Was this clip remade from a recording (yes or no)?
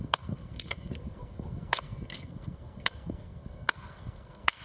yes